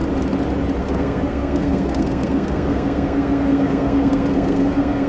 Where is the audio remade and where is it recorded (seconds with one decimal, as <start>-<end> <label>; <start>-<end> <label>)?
0.0-0.8 recorded; 0.8-5.1 remade